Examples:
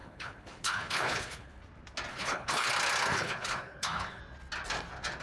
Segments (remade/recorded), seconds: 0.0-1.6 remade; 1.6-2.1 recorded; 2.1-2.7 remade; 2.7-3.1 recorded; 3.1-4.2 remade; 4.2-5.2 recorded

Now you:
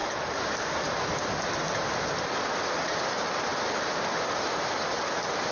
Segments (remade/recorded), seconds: 0.0-5.5 recorded

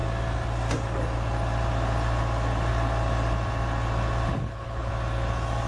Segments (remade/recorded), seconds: 0.0-4.3 recorded; 4.3-4.9 remade; 4.9-5.7 recorded

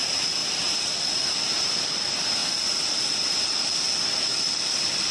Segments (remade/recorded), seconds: 0.0-5.1 recorded

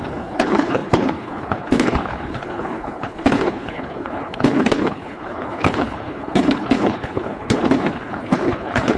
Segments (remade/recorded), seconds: 0.0-9.0 remade

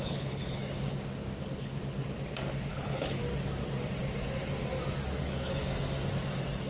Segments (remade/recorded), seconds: 0.0-0.6 remade; 0.6-1.4 recorded; 1.4-1.8 remade; 1.8-2.7 recorded; 2.7-3.2 remade; 3.2-5.2 recorded; 5.2-5.7 remade; 5.7-6.7 recorded